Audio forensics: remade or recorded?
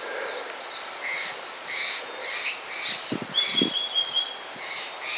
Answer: recorded